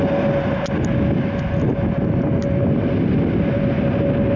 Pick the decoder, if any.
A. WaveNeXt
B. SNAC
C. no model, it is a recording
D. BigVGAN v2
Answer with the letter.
C